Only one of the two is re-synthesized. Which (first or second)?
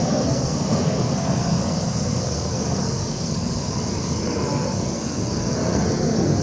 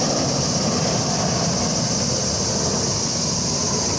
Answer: first